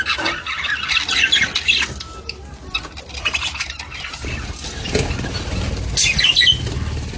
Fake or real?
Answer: real